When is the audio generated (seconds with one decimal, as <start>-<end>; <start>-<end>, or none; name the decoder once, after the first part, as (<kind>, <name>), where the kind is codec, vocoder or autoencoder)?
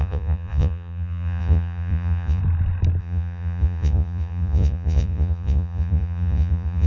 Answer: 0.0-2.4 (vocoder, Vocos); 3.0-6.9